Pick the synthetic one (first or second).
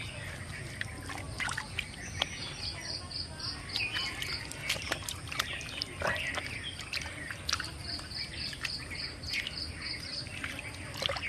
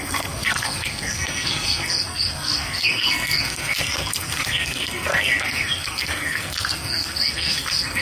second